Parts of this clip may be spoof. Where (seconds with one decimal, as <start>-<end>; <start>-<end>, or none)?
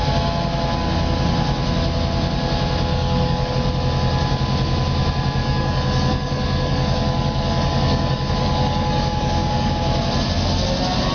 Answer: 2.9-3.5; 5.4-9.7